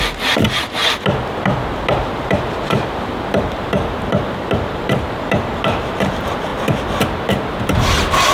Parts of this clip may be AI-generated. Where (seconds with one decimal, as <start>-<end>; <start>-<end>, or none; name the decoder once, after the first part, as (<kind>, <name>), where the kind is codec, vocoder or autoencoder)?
none